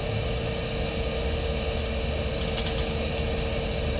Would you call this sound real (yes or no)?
yes